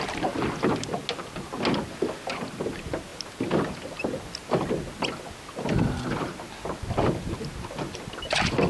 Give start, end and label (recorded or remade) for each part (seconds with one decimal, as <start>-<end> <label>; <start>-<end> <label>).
0.0-8.7 recorded